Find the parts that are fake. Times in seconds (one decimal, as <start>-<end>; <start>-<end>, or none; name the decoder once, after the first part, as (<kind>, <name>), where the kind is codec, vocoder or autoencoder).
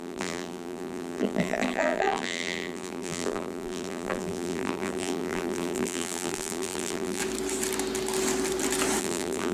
0.0-7.2 (vocoder, BigVGAN v2); 9.0-9.5